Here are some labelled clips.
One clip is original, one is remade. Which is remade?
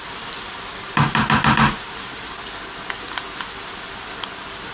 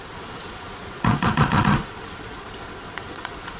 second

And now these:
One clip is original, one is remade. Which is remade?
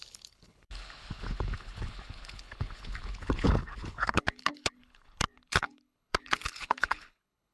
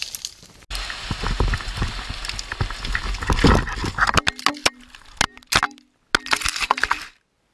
first